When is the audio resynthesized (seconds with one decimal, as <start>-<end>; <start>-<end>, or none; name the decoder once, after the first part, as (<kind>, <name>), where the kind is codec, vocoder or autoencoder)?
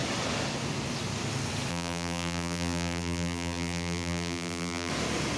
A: 1.7-4.9 (vocoder, BigVGAN v2)